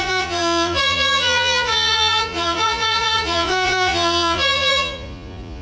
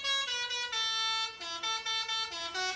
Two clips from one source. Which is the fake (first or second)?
first